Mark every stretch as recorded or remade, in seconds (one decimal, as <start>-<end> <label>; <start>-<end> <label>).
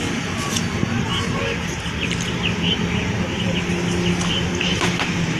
0.0-5.4 recorded